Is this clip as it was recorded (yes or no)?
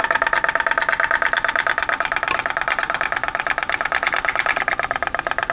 yes